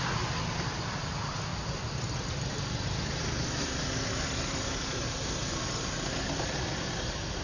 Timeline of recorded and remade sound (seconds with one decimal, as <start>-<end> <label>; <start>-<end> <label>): 0.0-7.4 recorded